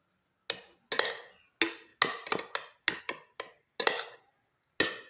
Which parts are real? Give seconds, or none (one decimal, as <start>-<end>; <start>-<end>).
0.0-5.1